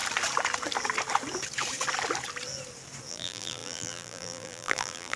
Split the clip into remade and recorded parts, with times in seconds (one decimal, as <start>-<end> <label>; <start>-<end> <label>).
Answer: 0.0-3.1 recorded; 3.1-5.2 remade